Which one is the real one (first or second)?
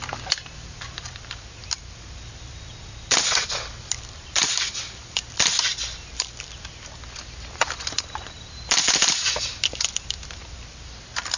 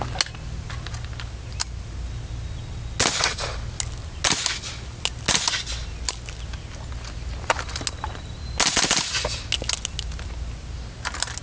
second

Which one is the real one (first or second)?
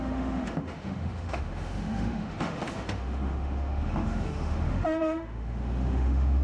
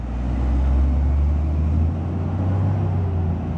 second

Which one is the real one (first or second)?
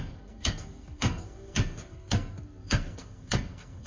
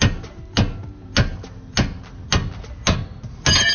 second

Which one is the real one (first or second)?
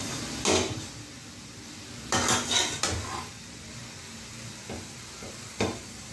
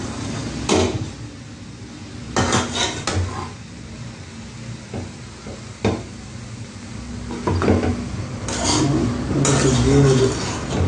second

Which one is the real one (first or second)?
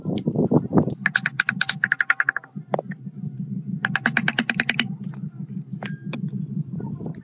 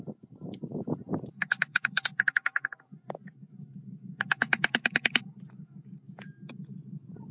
first